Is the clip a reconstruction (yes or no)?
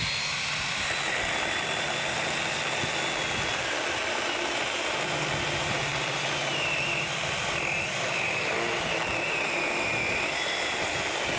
no